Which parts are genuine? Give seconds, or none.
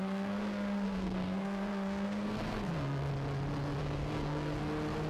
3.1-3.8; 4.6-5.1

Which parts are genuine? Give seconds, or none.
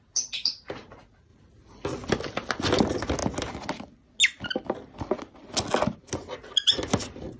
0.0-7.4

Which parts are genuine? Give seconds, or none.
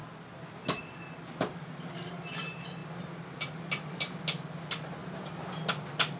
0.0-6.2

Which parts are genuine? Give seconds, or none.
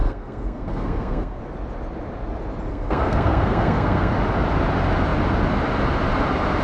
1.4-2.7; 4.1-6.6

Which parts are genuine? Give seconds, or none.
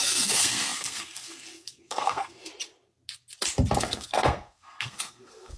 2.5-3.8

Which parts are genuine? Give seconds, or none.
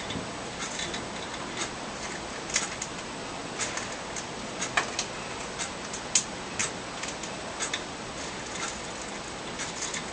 0.0-10.1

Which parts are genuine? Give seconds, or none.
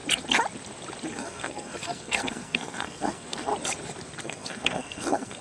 0.0-1.1; 3.5-4.2